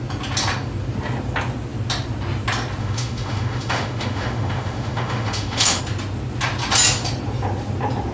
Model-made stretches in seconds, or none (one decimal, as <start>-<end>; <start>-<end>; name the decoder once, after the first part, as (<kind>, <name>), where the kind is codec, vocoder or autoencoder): 2.8-5.8 (autoencoder, DAC-VAE)